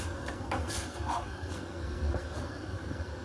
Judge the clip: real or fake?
fake